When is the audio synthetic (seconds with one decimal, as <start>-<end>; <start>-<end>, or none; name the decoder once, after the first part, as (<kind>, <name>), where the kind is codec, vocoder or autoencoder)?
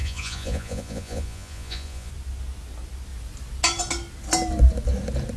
0.0-2.1 (vocoder, Vocos)